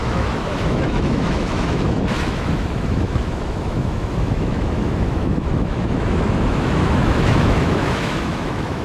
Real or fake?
fake